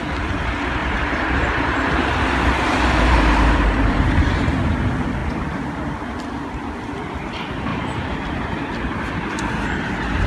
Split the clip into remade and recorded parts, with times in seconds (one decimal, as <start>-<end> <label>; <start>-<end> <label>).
0.0-0.8 recorded; 0.8-4.7 remade; 4.7-7.7 recorded; 7.7-8.7 remade; 8.7-10.3 recorded